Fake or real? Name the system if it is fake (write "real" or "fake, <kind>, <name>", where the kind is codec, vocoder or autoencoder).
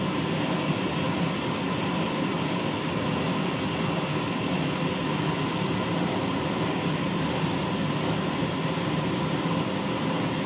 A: real